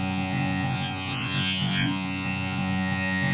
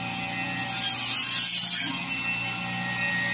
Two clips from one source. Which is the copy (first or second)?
first